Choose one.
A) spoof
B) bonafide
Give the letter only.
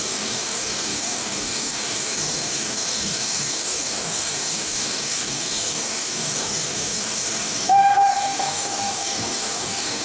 A